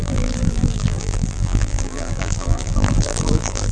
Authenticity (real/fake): fake